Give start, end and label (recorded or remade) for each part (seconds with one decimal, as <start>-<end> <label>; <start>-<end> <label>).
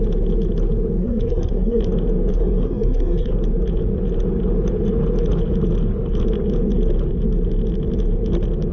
0.0-1.0 recorded; 1.0-1.8 remade; 1.8-2.3 recorded; 2.3-3.3 remade; 3.3-8.7 recorded